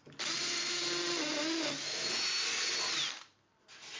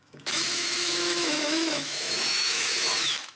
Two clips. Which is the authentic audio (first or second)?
first